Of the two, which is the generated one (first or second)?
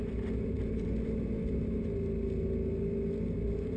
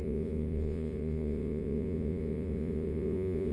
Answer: second